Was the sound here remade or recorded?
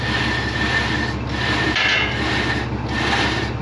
recorded